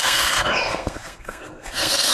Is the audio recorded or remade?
remade